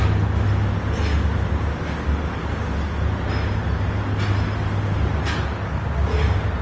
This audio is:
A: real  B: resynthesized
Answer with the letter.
A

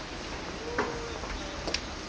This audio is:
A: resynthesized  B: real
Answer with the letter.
B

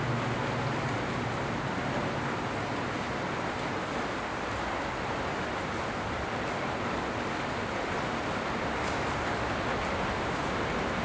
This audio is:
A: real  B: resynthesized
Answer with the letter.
A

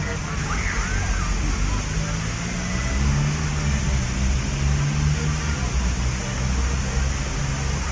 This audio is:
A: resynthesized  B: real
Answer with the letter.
B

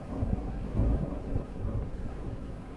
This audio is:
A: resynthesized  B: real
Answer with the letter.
A